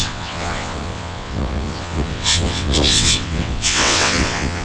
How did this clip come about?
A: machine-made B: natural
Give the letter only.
A